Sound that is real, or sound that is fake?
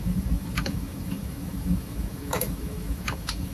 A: fake